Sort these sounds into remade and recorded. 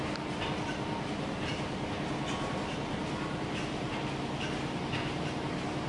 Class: recorded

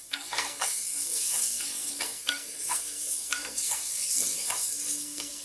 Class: remade